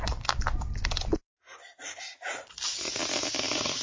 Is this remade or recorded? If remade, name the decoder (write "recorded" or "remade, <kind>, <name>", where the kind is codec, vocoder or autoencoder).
recorded